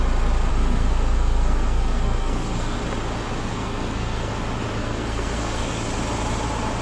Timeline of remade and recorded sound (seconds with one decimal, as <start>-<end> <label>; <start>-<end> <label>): 0.0-0.5 recorded; 0.5-2.8 remade; 2.8-3.4 recorded; 3.4-4.3 remade; 4.3-4.8 recorded; 4.8-5.8 remade; 5.8-6.8 recorded